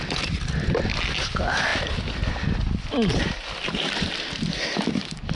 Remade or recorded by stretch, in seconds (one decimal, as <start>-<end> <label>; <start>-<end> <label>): 0.0-5.4 recorded